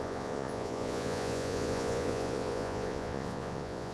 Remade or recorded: remade